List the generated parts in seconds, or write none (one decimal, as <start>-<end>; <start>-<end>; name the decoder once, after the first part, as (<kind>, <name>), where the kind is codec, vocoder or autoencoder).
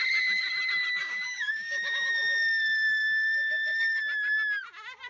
1.0-4.0 (codec, DAC)